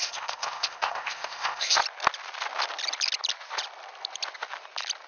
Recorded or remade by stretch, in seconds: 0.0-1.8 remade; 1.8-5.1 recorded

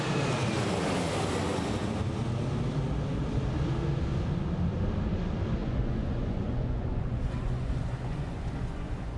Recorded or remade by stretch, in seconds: 0.0-5.6 recorded; 5.6-9.2 remade

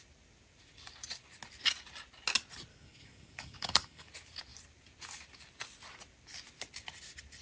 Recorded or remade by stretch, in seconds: 0.0-2.7 recorded; 2.7-4.1 remade; 4.1-7.4 recorded

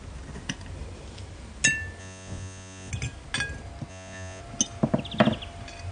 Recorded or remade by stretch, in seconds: 0.0-2.0 recorded; 2.0-2.9 remade; 2.9-3.9 recorded; 3.9-4.4 remade; 4.4-5.9 recorded

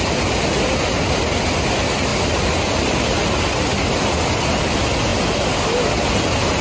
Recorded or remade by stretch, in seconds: 0.0-6.6 recorded

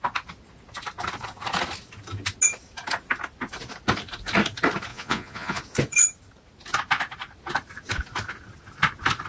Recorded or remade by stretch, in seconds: 0.0-4.9 recorded; 4.9-5.6 remade; 5.6-9.3 recorded

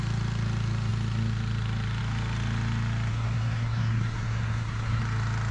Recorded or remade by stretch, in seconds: 0.0-3.1 recorded; 3.1-5.0 remade; 5.0-5.5 recorded

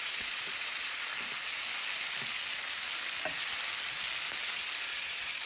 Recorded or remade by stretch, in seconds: 0.0-1.1 remade; 1.1-4.4 recorded; 4.4-5.5 remade